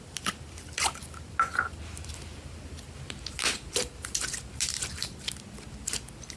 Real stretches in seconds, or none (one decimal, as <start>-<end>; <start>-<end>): 0.0-6.4